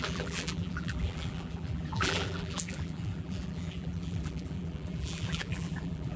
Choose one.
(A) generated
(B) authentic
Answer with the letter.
A